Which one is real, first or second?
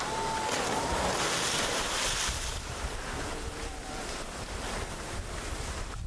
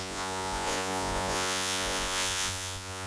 first